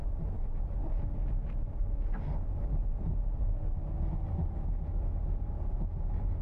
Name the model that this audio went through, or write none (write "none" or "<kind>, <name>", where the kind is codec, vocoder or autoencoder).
none